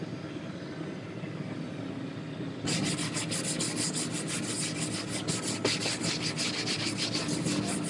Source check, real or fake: real